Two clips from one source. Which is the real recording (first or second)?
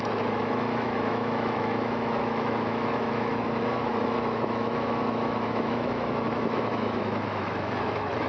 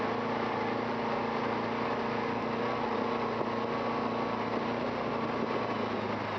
second